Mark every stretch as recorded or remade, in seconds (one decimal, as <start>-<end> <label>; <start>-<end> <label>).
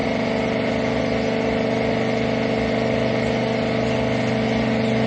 0.0-5.1 recorded